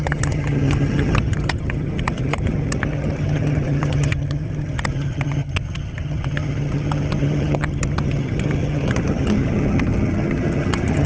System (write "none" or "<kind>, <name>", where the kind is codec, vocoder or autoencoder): vocoder, HiFi-GAN